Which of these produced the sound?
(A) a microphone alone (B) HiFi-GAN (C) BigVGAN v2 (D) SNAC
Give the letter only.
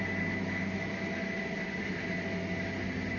A